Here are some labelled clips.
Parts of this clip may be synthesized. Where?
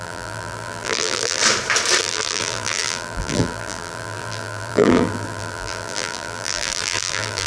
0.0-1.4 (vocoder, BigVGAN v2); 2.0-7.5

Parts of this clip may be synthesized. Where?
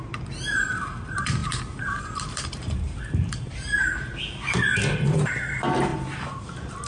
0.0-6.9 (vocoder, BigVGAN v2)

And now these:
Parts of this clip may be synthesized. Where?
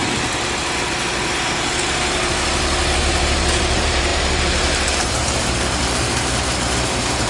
3.0-7.3 (vocoder, BigVGAN v2)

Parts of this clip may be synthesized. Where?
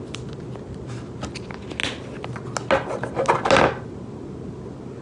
none